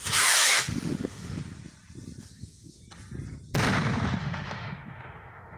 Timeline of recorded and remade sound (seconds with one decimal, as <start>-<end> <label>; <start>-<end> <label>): 0.0-1.4 remade; 1.4-2.2 recorded; 2.2-2.8 remade; 2.8-4.2 recorded; 4.2-5.6 remade